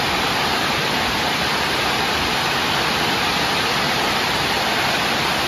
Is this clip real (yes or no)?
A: yes